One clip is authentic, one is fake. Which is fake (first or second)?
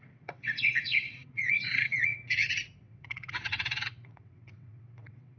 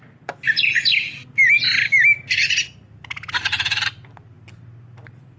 first